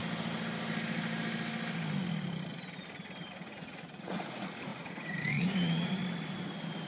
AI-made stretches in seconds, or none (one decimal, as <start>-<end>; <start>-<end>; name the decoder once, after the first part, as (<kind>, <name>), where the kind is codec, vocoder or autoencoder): 3.3-6.0 (vocoder, Vocos)